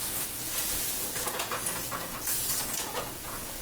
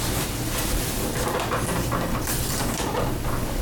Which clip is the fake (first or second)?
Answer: first